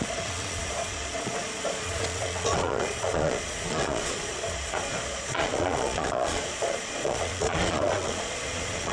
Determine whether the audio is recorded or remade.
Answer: remade